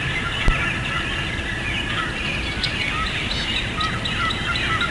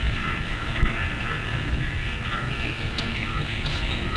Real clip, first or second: first